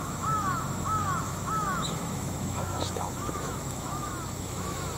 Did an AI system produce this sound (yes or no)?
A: yes